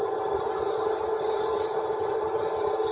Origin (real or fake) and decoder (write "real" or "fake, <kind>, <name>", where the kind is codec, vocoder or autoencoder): real